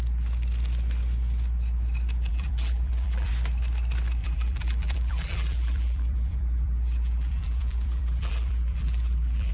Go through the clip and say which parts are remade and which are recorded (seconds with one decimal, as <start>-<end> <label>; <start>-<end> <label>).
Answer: 0.0-2.3 recorded; 2.3-3.3 remade; 3.3-4.2 recorded; 4.2-9.5 remade